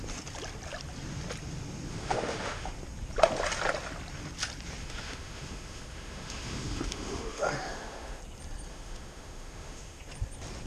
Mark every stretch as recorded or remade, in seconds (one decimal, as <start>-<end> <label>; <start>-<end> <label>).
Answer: 0.0-1.9 recorded; 1.9-2.7 remade; 2.7-4.8 recorded; 4.8-8.2 remade; 8.2-8.7 recorded; 8.7-10.0 remade; 10.0-10.7 recorded